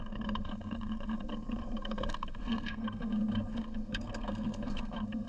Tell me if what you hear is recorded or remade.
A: remade